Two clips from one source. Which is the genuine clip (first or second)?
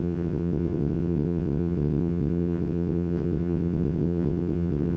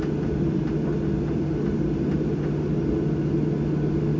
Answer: second